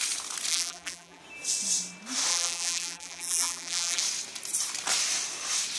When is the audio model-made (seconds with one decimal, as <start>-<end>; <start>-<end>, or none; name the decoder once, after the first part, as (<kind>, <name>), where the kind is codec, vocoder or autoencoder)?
0.5-1.2 (vocoder, BigVGAN v2); 2.3-4.0